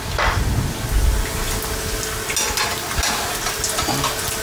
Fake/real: real